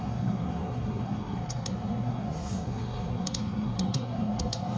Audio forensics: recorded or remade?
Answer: remade